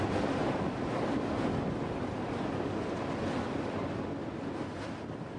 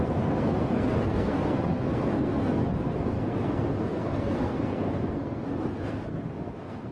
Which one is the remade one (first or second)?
second